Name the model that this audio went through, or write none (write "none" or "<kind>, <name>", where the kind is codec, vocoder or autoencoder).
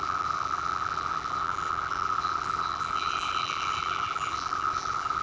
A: vocoder, BigVGAN v2